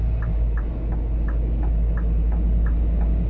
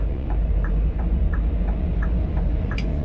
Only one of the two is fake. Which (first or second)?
second